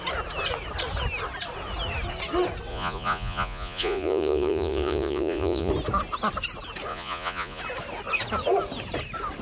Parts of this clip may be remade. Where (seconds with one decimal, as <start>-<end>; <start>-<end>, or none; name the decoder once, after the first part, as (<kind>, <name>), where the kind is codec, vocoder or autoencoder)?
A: 2.7-5.7 (vocoder, Vocos); 6.9-7.6